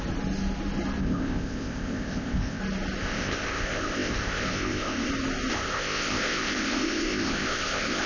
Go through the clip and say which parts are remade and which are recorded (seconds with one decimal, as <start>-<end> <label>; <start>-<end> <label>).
0.0-1.0 recorded; 1.0-2.6 remade; 2.6-3.0 recorded; 3.0-5.1 remade; 5.1-5.5 recorded; 5.5-8.1 remade